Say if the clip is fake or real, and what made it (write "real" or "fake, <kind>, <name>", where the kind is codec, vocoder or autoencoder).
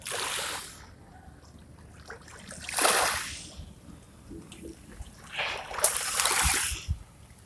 real